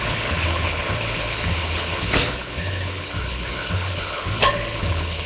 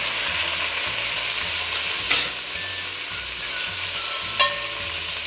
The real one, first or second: second